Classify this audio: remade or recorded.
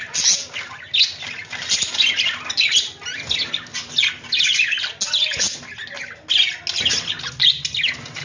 recorded